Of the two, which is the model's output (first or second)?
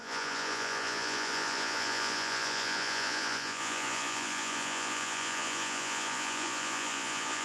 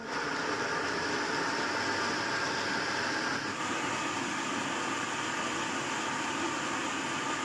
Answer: first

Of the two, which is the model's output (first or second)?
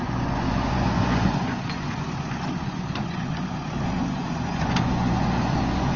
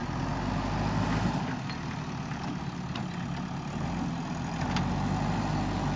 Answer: first